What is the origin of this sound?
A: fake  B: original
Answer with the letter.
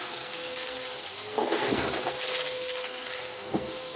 A